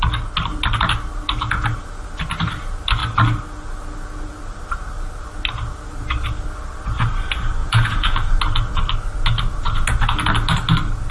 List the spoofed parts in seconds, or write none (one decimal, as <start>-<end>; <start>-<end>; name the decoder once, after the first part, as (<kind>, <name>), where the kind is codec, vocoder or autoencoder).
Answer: 7.6-8.4 (vocoder, Vocos)